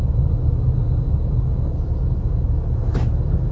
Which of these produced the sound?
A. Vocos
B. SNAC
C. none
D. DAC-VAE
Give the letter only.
C